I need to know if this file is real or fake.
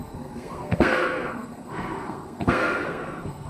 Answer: fake